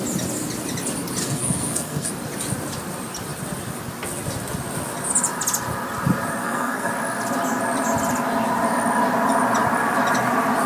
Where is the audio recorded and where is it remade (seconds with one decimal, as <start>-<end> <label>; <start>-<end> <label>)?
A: 0.0-1.2 recorded; 1.2-2.1 remade; 2.1-6.4 recorded; 6.4-6.9 remade; 6.9-10.7 recorded